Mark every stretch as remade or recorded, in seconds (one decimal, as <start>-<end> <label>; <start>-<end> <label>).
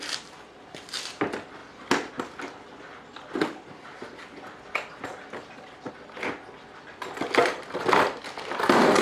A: 0.0-9.0 recorded